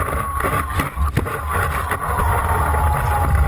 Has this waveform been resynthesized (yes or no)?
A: no